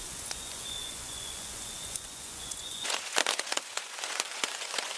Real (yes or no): no